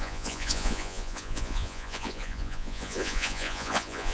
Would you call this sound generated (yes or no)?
yes